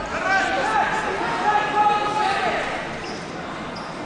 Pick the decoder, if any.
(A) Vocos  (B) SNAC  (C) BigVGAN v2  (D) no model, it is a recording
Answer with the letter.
D